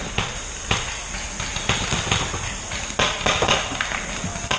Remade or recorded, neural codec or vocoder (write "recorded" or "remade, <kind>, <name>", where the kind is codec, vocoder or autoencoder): recorded